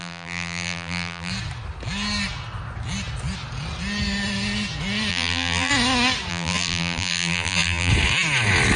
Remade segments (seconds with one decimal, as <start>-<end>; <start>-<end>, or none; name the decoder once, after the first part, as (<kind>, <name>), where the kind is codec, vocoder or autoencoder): 0.0-1.3 (vocoder, BigVGAN v2); 5.1-5.7; 6.3-7.9